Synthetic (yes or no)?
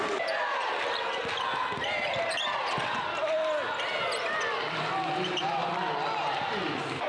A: no